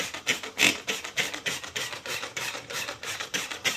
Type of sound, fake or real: fake